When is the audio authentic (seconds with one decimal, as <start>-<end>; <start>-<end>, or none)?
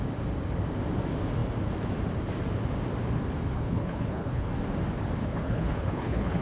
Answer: 0.0-3.5; 4.5-5.2